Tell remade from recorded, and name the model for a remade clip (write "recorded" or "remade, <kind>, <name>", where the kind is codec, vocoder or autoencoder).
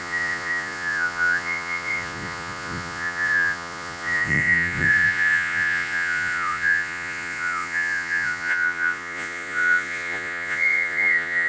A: remade, vocoder, Vocos